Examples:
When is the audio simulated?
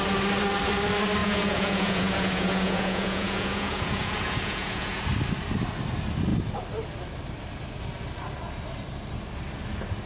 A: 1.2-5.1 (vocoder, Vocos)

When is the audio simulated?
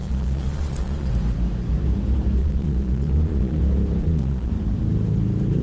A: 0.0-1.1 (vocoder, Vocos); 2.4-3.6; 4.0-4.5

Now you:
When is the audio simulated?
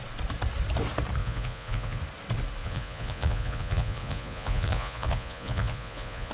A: 1.2-2.0 (vocoder, Vocos); 2.6-6.3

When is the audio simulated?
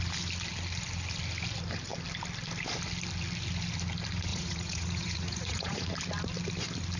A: 4.3-5.9 (vocoder, Vocos)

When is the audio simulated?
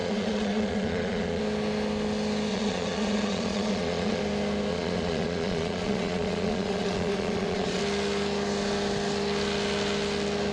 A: 0.0-1.4 (vocoder, Vocos); 2.5-4.2; 4.7-7.8